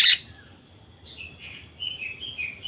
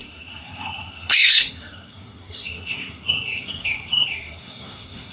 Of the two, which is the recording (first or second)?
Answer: first